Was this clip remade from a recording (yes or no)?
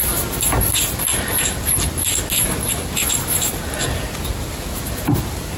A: no